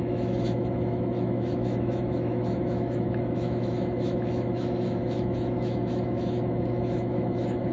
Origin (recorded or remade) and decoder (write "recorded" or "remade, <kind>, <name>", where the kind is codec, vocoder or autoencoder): remade, autoencoder, DAC-VAE